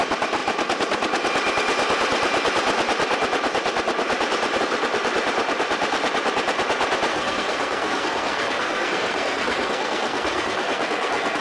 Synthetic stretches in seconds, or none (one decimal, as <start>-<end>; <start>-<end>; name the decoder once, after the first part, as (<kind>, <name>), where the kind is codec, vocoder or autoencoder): 7.1-11.4 (codec, SNAC)